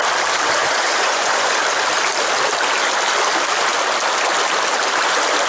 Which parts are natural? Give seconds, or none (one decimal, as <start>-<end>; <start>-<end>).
0.0-0.6; 1.6-5.5

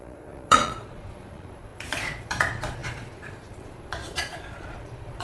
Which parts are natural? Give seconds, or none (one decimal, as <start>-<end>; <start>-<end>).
none

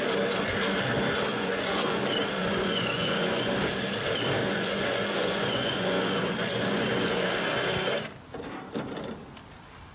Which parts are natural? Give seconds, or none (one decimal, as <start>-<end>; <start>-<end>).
0.0-1.3; 2.0-2.4; 3.5-4.4; 7.3-9.9

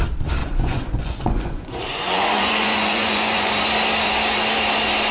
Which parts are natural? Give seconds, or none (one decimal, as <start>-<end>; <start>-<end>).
0.0-0.4; 3.5-5.1